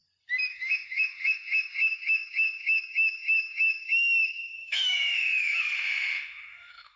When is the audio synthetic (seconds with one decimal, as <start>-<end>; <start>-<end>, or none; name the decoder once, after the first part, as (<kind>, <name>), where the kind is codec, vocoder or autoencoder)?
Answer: 0.5-7.0 (autoencoder, DAC-VAE)